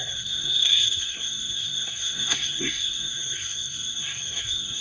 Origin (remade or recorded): remade